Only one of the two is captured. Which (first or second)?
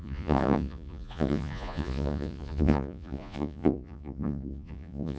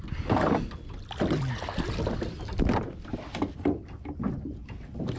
second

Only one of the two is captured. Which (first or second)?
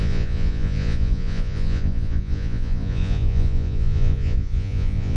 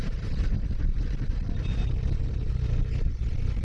second